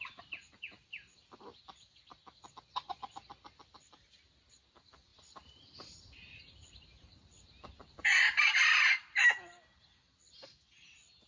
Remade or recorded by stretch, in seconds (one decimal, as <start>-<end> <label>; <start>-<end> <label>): 0.0-5.1 recorded; 5.1-9.2 remade; 9.2-11.3 recorded